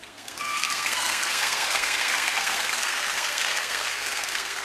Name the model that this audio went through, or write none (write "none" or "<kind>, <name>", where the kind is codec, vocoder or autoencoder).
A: codec, SNAC